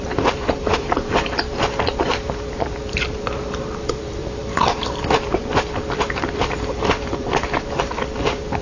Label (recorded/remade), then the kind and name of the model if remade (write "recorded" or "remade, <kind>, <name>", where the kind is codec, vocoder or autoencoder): remade, vocoder, BigVGAN v2